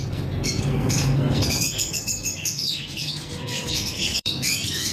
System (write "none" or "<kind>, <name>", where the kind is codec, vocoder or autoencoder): codec, SNAC